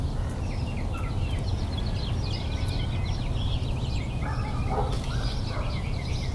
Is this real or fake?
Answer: real